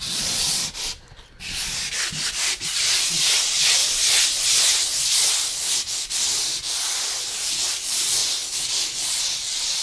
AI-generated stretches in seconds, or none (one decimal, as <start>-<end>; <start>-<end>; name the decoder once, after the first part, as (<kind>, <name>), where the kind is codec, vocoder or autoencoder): 0.0-0.6 (vocoder, Vocos); 3.1-3.8; 7.5-8.2; 9.2-9.8